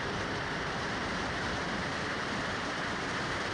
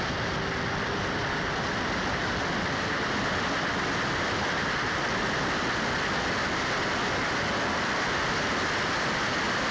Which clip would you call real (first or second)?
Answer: second